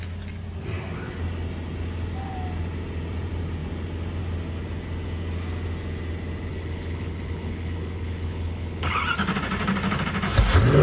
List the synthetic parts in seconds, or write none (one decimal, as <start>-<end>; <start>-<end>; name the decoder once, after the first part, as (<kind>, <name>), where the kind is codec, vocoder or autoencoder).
6.5-9.0 (codec, HILCodec)